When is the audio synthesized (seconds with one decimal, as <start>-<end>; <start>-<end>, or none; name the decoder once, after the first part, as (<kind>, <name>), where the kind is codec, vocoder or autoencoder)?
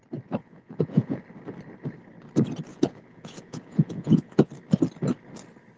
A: 0.4-1.2 (vocoder, Vocos); 2.7-4.5